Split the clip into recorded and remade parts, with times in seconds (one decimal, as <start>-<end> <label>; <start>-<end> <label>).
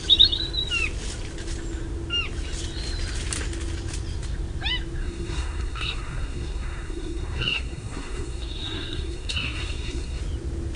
0.0-5.0 recorded; 5.0-10.2 remade; 10.2-10.8 recorded